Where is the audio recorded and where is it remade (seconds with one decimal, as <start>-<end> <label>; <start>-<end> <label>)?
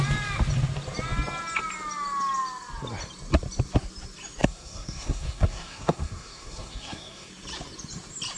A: 0.0-4.4 recorded; 4.4-7.3 remade; 7.3-8.4 recorded